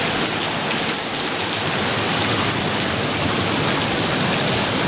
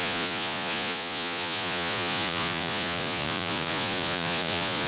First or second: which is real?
first